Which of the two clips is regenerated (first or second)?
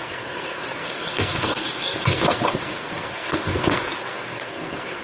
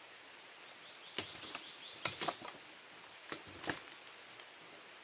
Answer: first